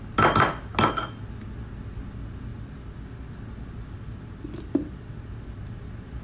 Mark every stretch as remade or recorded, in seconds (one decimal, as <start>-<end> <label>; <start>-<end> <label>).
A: 0.0-6.2 recorded